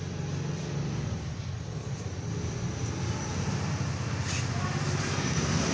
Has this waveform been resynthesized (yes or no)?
no